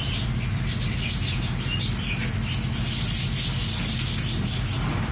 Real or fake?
real